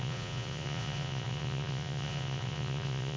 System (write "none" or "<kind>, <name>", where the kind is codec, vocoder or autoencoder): vocoder, Vocos